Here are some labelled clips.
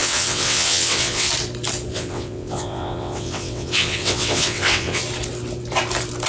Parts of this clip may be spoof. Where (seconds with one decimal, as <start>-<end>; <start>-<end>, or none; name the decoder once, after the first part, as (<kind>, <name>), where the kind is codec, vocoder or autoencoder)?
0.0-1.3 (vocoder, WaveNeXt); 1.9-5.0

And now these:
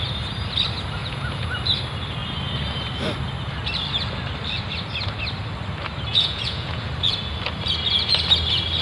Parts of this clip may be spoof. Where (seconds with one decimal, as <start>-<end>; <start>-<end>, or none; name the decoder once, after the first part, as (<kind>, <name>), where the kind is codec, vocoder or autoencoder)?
1.0-1.5 (vocoder, Vocos); 6.1-6.9

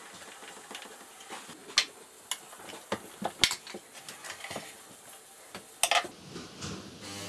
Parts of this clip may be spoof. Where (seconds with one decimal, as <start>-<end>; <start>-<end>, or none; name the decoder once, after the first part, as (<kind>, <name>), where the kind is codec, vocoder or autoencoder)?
none

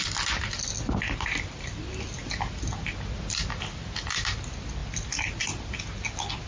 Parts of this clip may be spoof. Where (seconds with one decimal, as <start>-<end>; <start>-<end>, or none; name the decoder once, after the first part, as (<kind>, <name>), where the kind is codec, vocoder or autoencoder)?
none

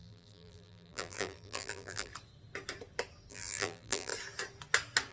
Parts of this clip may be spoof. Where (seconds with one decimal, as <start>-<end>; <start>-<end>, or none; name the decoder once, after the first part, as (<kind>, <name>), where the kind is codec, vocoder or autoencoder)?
0.0-2.1 (vocoder, BigVGAN v2); 3.3-4.1

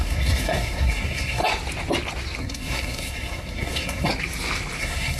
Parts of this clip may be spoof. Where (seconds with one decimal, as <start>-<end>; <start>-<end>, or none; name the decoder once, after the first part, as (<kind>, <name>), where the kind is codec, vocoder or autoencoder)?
0.0-1.4 (codec, SNAC); 2.4-4.1; 4.8-5.2